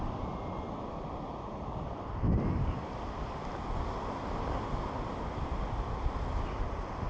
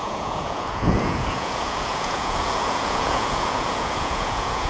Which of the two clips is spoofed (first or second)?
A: second